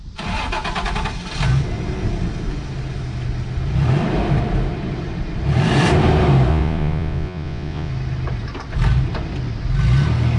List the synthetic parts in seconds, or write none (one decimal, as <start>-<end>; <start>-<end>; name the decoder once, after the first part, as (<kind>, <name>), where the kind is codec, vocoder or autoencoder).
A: 6.5-7.9 (vocoder, Vocos)